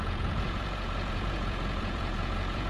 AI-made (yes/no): yes